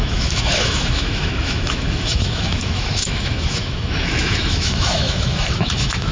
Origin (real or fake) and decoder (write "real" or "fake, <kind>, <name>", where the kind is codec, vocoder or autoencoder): fake, autoencoder, DAC-VAE